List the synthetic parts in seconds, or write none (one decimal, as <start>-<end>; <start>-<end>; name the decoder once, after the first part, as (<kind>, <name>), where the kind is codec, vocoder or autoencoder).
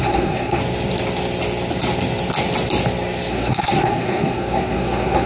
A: 0.0-0.6 (codec, SNAC); 3.3-5.3